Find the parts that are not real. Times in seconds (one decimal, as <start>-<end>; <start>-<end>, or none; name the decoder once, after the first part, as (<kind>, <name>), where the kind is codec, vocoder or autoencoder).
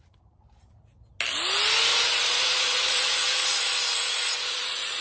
1.9-5.0 (vocoder, Vocos)